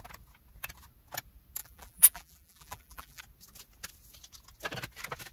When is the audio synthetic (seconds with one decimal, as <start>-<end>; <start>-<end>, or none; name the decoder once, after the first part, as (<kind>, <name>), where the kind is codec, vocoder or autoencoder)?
1.6-3.2 (vocoder, BigVGAN v2)